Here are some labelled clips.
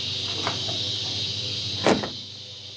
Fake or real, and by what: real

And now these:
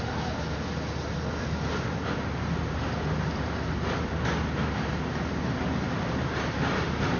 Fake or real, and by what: real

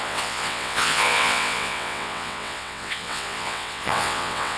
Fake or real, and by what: fake, vocoder, WaveNeXt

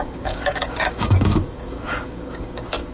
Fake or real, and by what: fake, codec, DAC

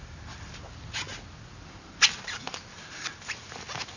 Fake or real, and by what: real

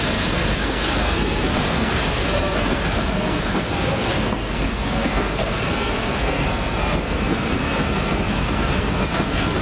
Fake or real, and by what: fake, codec, SNAC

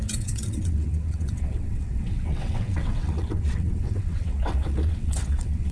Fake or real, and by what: fake, vocoder, WaveNeXt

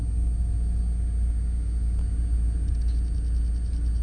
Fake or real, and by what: real